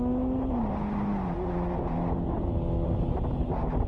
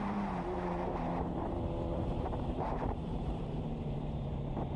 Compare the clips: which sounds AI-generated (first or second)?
second